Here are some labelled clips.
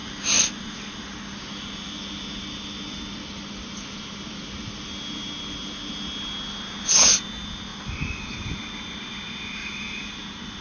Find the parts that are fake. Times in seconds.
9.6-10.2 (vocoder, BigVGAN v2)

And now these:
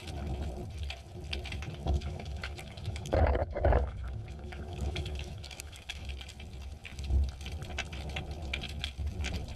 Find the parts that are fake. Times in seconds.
1.8-6.1 (codec, DAC)

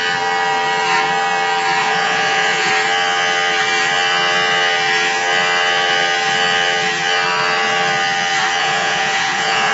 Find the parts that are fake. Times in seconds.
1.8-2.7 (vocoder, Vocos); 8.6-9.7

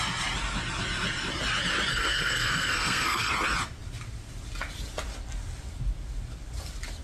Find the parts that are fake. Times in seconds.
1.9-3.3 (codec, SNAC)

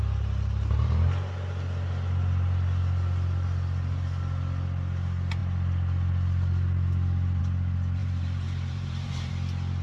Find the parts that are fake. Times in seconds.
8.0-9.3 (vocoder, BigVGAN v2)

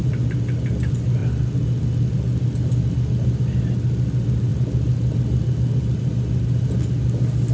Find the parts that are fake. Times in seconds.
none

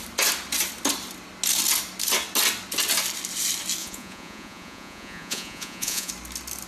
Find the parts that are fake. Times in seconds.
3.8-6.1 (vocoder, Vocos)